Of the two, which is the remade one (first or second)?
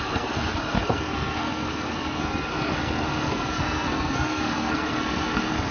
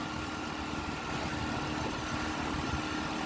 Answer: first